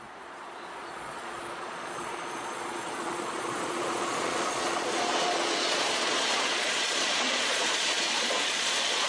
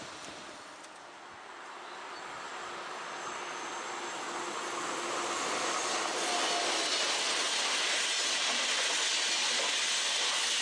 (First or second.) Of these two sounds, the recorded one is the second